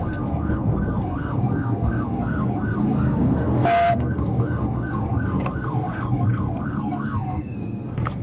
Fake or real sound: fake